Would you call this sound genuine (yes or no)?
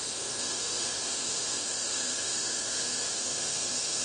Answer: no